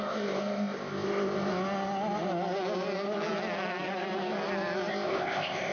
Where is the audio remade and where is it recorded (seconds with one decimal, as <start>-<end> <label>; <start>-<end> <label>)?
0.0-1.5 remade; 1.5-4.9 recorded; 4.9-5.7 remade